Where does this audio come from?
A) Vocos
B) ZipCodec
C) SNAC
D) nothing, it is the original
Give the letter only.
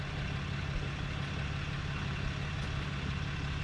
D